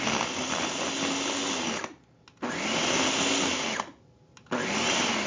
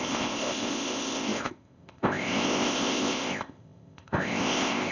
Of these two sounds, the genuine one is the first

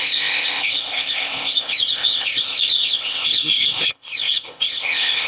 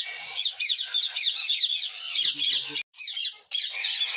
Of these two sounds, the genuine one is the second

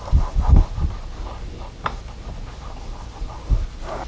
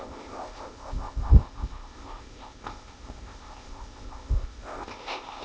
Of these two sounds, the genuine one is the first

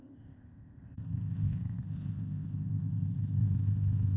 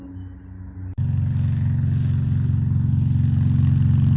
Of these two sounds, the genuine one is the second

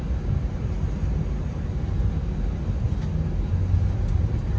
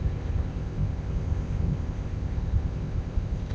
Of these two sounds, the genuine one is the first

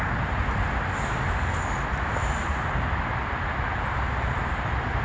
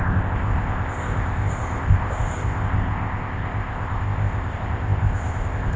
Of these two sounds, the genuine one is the first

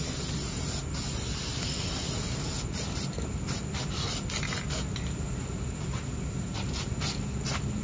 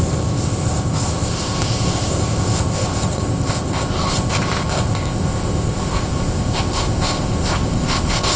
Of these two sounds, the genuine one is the first